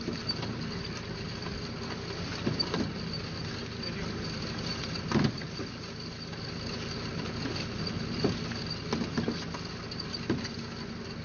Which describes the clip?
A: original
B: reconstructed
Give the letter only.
A